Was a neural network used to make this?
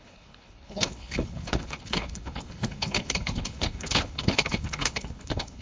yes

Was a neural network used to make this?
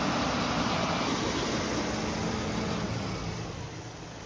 no